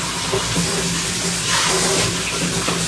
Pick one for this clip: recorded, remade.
recorded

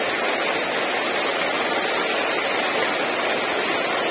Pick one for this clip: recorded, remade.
recorded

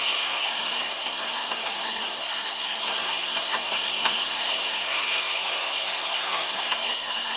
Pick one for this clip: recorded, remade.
remade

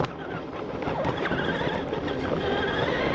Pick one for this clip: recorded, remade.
recorded